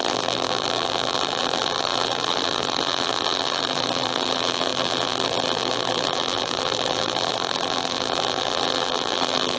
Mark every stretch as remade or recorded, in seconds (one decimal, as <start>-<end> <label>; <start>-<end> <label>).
0.0-9.6 remade